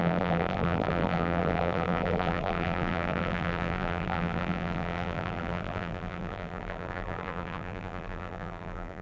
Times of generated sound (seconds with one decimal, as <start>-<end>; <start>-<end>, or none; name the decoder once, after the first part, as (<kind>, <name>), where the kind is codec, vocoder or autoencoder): 0.0-9.0 (vocoder, BigVGAN v2)

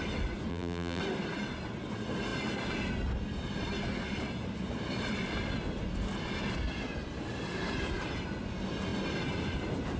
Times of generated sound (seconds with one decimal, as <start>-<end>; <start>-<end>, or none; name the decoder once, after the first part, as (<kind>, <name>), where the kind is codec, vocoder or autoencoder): 0.5-1.0 (vocoder, BigVGAN v2)

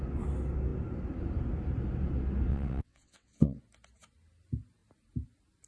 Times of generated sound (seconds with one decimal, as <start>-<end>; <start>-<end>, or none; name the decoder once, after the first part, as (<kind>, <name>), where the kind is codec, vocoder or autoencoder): 2.5-3.6 (vocoder, WaveNeXt)

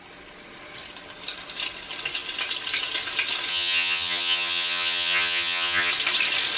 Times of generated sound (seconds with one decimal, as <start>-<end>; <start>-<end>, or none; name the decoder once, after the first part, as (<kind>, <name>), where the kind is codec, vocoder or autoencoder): 3.5-5.9 (vocoder, HiFi-GAN)

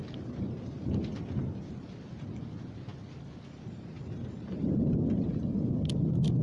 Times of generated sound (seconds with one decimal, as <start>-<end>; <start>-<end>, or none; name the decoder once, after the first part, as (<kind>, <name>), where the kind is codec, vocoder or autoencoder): none

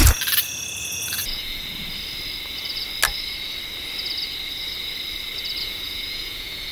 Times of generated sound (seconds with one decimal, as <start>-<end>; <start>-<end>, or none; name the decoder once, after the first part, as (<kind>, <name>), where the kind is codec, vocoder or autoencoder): 0.8-1.6 (vocoder, Vocos); 5.6-6.7